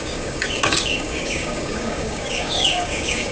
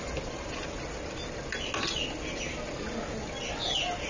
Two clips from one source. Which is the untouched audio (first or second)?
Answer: second